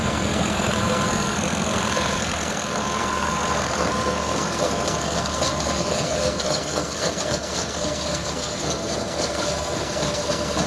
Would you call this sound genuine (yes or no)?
no